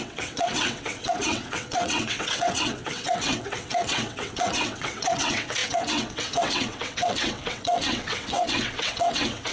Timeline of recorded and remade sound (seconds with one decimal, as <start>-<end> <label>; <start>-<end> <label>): 0.0-9.5 remade